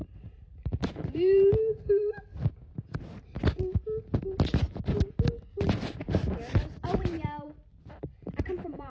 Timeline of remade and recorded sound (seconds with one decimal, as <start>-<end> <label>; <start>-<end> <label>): 0.0-2.3 remade; 2.3-7.0 recorded; 7.0-8.9 remade